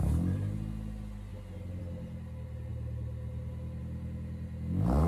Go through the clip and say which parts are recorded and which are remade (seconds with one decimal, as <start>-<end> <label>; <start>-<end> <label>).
0.0-5.1 recorded